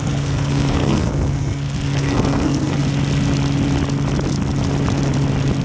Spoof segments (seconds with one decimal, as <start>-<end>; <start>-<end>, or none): 0.0-2.8